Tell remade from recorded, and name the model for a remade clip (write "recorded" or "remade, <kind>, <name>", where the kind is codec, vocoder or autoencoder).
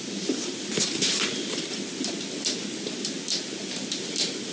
recorded